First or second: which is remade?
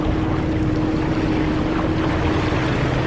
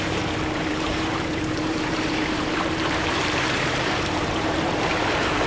second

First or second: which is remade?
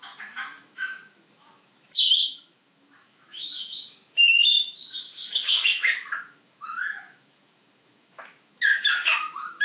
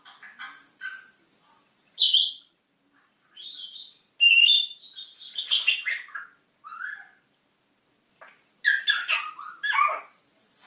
first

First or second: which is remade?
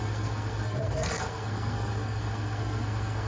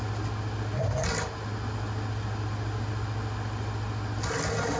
first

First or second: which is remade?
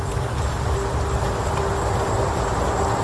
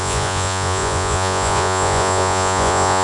second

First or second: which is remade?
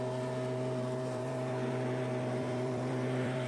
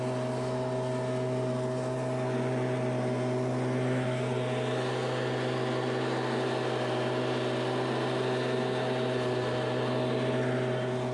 first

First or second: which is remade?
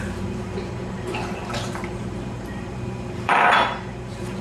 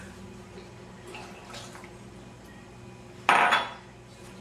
first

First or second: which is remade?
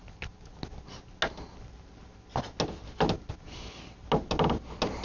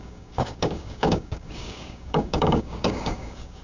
second